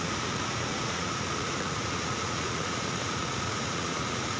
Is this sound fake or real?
fake